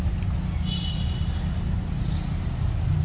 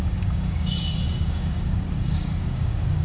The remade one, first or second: second